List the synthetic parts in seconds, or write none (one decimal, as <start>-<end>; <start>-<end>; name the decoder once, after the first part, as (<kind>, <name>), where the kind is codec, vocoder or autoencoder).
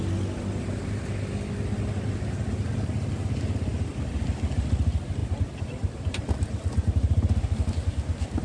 none